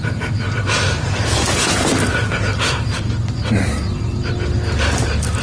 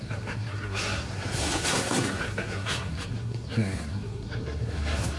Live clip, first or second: first